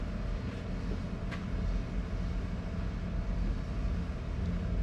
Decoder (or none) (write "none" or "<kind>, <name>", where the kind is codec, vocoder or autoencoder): none